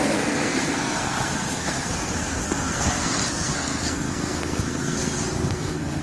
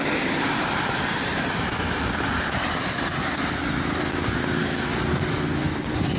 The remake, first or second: first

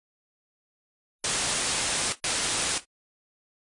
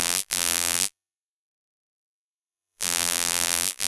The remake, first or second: second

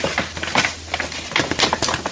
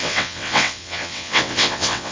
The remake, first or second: second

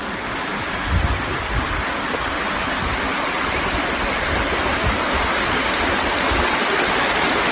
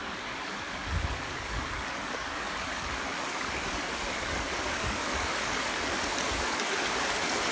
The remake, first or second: second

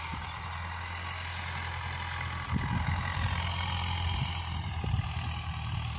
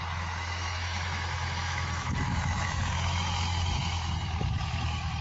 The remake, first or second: second